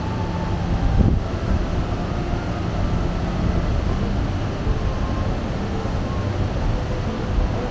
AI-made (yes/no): no